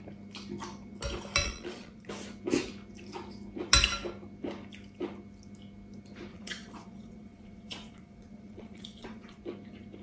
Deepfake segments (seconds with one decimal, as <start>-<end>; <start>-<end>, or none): 1.4-2.1; 6.3-9.4